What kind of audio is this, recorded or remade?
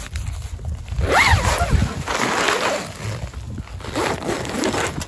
recorded